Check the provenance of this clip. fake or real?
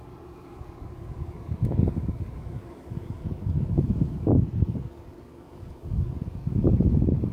fake